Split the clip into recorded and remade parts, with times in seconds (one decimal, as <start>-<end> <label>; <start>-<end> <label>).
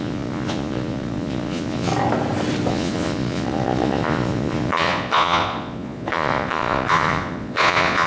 0.0-1.9 remade; 1.9-2.7 recorded; 2.7-8.1 remade